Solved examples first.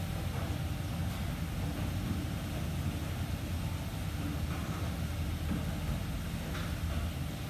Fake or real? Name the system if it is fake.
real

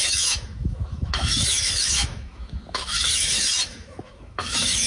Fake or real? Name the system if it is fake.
fake, autoencoder, DAC-VAE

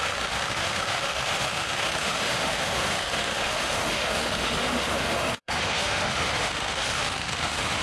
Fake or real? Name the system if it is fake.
fake, autoencoder, DAC-VAE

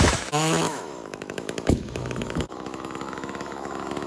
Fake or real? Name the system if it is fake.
fake, autoencoder, DAC-VAE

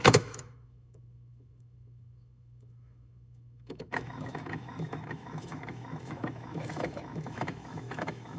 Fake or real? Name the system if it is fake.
fake, autoencoder, DAC-VAE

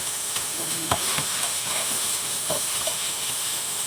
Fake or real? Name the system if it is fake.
fake, autoencoder, DAC-VAE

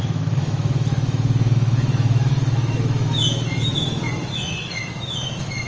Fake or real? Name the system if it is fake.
fake, autoencoder, DAC-VAE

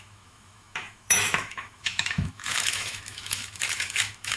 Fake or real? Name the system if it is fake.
fake, autoencoder, DAC-VAE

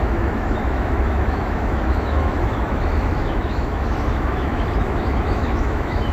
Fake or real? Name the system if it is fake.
fake, autoencoder, DAC-VAE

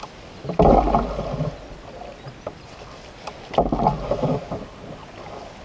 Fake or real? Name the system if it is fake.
real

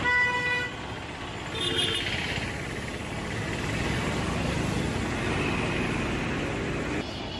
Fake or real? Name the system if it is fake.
real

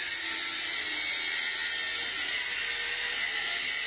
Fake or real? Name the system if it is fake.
real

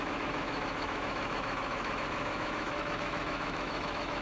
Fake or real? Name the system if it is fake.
fake, autoencoder, DAC-VAE